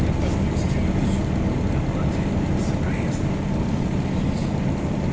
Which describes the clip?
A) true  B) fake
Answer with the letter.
A